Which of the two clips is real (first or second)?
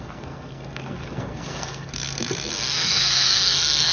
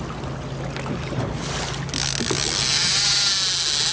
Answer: second